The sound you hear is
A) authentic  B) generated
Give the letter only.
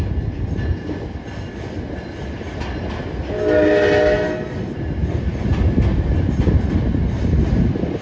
A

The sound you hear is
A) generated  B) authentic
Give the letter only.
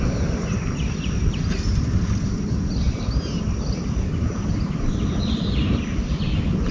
B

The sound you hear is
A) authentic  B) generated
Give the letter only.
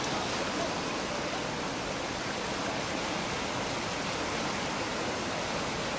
A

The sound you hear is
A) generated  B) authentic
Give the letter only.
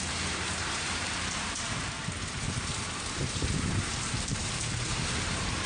A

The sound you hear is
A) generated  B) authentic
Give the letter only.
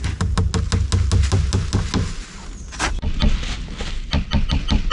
B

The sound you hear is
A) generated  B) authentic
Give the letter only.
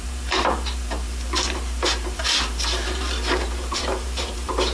A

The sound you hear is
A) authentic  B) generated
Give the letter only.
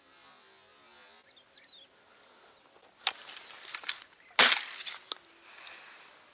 A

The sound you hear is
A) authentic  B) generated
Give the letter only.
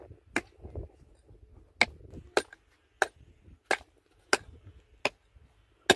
A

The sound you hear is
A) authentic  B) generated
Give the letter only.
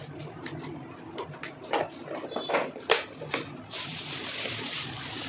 A